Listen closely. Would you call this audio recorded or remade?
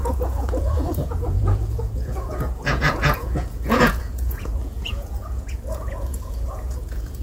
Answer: remade